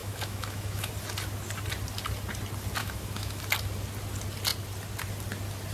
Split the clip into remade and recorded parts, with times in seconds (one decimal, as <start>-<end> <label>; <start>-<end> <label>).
0.0-0.9 remade; 0.9-2.8 recorded; 2.8-3.4 remade; 3.4-5.7 recorded